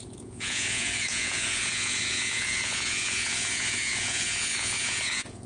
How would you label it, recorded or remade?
remade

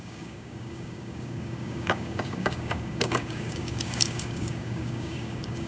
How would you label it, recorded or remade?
remade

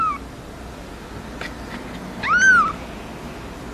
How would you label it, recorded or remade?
recorded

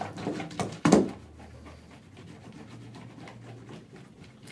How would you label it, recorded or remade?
recorded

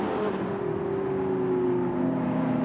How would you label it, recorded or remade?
recorded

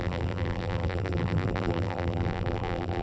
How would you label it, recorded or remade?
remade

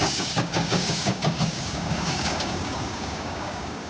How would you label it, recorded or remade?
remade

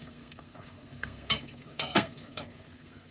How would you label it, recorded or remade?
remade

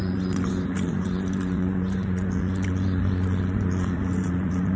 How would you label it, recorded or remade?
remade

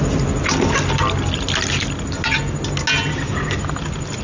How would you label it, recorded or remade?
recorded